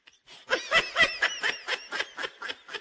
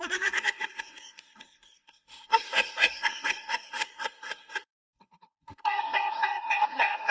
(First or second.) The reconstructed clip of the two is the second